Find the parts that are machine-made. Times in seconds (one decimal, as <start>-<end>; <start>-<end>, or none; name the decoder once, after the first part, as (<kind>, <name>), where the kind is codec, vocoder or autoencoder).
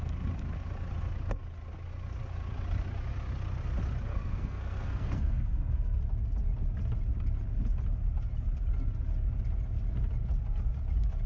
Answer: 4.1-6.0 (codec, SNAC)